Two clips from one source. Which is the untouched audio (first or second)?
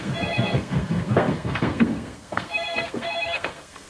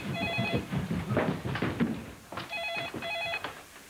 second